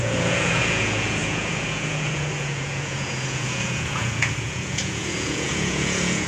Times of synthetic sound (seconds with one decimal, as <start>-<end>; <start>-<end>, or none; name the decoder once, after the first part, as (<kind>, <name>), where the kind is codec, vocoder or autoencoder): 0.0-6.3 (vocoder, Vocos)